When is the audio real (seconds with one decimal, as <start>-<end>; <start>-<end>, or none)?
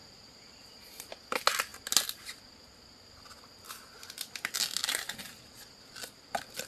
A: 1.1-6.7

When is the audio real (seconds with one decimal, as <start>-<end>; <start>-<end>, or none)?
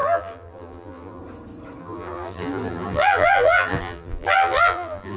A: 1.2-1.8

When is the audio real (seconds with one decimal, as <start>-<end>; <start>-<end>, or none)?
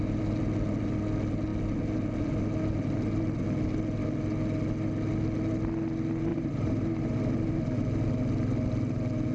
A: 0.0-6.3; 7.2-9.3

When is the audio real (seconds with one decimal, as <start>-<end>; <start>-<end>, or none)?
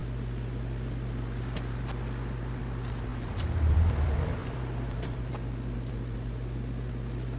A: 0.0-3.1; 3.9-4.4; 5.3-7.4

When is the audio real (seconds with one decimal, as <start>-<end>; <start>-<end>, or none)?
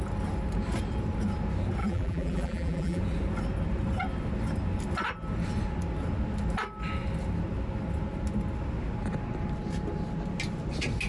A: 0.0-1.8; 3.0-11.1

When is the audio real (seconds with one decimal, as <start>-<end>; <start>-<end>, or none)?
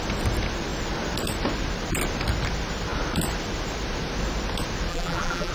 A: 0.0-4.9